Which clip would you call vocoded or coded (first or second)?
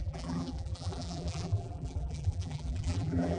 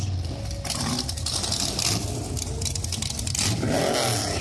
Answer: first